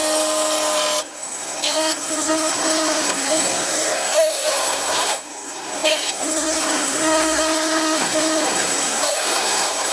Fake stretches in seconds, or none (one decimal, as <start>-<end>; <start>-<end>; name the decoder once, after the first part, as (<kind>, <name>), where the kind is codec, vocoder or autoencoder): 1.0-9.9 (codec, SNAC)